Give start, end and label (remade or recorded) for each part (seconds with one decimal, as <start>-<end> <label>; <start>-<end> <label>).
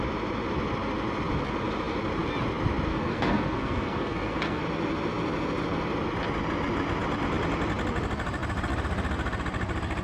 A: 0.0-2.9 recorded; 2.9-4.6 remade; 4.6-10.0 recorded